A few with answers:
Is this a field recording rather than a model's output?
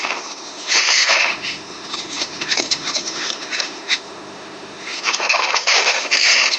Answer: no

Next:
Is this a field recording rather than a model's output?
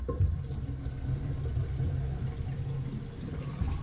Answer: yes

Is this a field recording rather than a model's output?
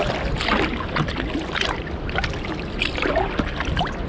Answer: yes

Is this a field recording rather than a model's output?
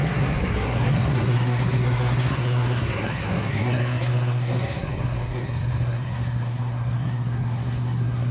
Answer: no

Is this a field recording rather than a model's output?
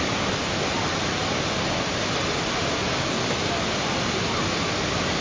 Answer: yes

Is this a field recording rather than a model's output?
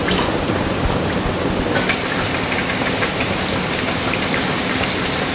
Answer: yes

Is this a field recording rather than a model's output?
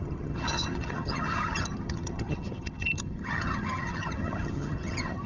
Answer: no